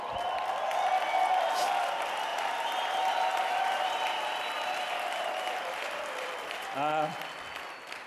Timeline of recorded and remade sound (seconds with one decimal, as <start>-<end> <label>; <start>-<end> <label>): 0.0-2.3 recorded; 2.3-6.3 remade; 6.3-8.1 recorded